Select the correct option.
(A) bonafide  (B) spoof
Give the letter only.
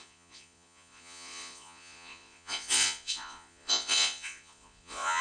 B